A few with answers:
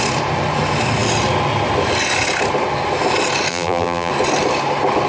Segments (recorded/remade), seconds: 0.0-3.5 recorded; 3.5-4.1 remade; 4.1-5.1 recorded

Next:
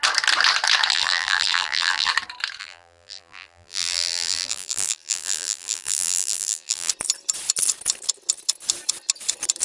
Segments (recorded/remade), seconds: 0.0-0.9 recorded; 0.9-2.1 remade; 2.1-2.6 recorded; 2.6-6.9 remade; 6.9-9.6 recorded

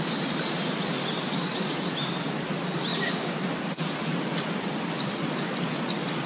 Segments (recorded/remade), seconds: 0.0-2.9 recorded; 2.9-5.1 remade; 5.1-6.3 recorded

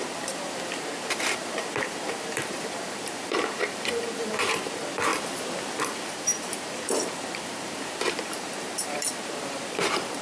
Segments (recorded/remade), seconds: 0.0-5.1 remade; 5.1-5.8 recorded; 5.8-10.2 remade

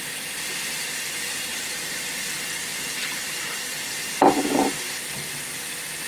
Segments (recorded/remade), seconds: 0.0-1.5 recorded; 1.5-2.5 remade; 2.5-3.0 recorded; 3.0-3.8 remade; 3.8-6.1 recorded